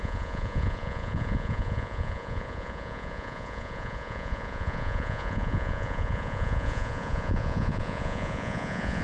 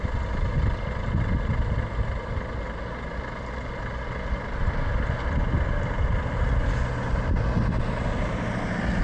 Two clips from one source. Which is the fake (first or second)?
first